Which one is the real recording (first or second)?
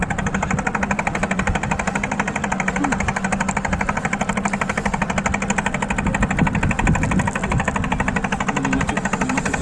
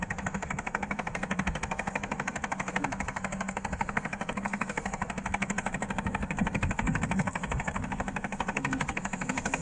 first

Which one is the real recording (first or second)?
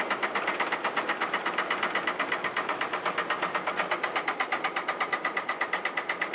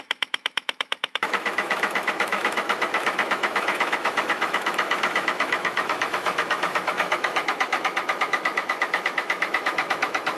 first